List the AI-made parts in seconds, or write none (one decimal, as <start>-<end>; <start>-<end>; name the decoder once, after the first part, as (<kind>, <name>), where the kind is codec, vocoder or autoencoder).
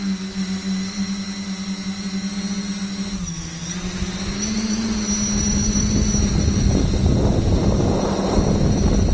none